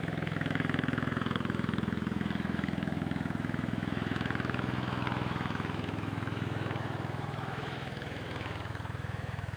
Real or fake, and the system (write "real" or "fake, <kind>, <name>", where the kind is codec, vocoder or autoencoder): fake, autoencoder, DAC-VAE